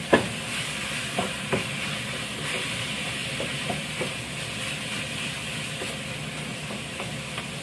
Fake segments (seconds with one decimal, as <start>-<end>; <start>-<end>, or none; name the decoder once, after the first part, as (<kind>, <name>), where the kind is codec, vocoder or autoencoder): 6.5-7.1 (vocoder, BigVGAN v2)